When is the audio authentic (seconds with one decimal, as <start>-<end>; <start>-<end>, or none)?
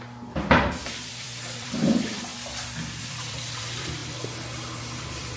2.3-3.0; 4.0-4.8